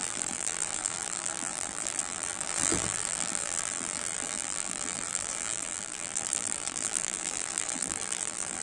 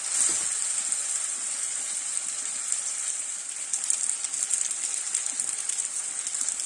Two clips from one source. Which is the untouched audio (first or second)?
second